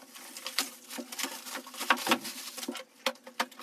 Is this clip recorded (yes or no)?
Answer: yes